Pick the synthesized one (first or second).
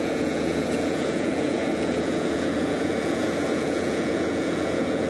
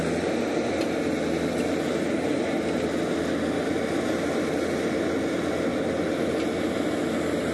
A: first